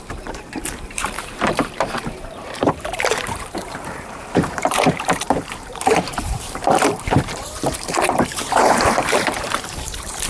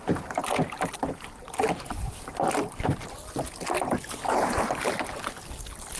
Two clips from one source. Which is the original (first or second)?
second